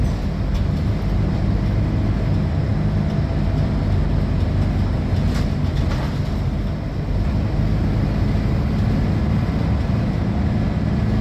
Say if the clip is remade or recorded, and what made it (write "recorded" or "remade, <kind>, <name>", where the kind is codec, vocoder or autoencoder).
recorded